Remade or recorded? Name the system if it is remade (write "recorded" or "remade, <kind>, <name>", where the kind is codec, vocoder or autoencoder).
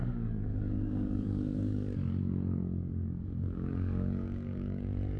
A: remade, codec, DAC